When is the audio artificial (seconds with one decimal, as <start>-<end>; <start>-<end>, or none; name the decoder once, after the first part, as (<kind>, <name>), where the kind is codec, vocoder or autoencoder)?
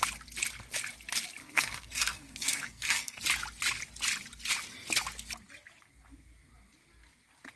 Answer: 1.4-3.2 (codec, SNAC)